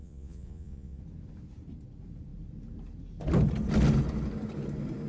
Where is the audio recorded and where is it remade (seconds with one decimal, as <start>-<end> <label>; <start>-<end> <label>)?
0.0-1.0 remade; 1.0-5.1 recorded